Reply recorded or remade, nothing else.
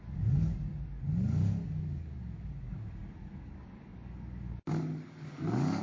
remade